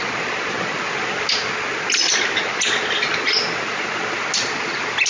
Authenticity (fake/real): real